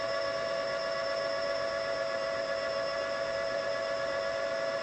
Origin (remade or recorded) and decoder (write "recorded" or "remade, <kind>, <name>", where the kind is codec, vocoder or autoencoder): recorded